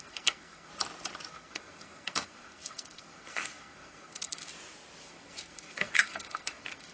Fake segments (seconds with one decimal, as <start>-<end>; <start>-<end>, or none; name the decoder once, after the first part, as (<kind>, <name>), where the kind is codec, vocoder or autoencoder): 0.0-0.7 (codec, SNAC); 1.3-4.5; 5.1-6.9